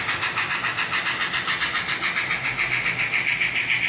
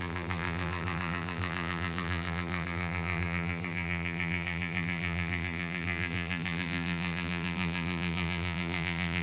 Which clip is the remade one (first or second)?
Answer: second